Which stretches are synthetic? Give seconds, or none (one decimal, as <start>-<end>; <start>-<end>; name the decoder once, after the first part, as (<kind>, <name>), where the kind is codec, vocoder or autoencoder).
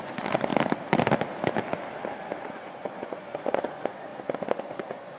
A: 0.0-0.5 (vocoder, Vocos); 2.4-5.2